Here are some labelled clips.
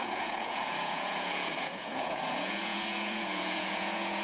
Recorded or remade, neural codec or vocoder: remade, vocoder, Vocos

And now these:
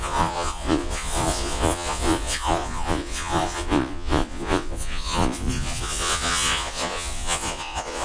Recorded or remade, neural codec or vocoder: remade, vocoder, Vocos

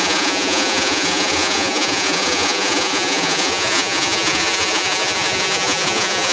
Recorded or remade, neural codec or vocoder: remade, vocoder, Vocos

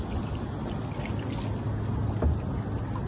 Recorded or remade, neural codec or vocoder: recorded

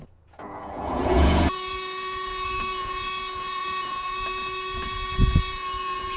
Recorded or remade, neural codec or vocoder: remade, vocoder, Vocos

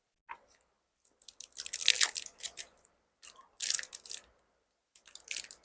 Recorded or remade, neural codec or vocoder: recorded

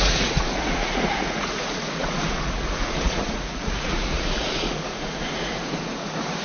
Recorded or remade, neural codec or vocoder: remade, vocoder, Vocos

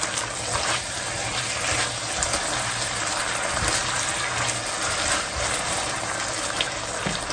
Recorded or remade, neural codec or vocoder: recorded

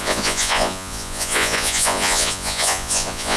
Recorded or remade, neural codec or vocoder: remade, vocoder, Vocos